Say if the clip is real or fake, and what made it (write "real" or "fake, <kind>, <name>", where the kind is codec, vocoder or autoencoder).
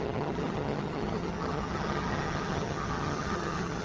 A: fake, vocoder, HiFi-GAN